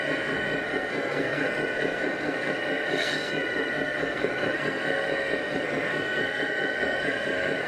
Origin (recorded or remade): remade